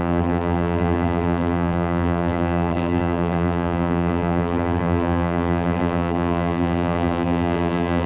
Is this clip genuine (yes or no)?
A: no